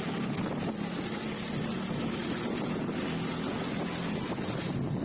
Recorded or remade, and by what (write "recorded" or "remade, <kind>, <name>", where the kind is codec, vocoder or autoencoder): recorded